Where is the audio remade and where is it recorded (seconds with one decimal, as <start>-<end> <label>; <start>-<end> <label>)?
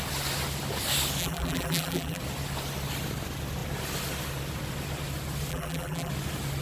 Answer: 0.0-1.2 recorded; 1.2-2.2 remade; 2.2-5.5 recorded; 5.5-6.1 remade; 6.1-6.6 recorded